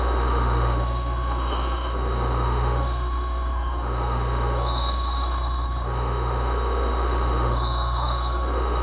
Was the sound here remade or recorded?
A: remade